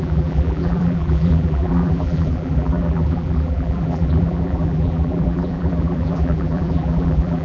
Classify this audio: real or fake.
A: fake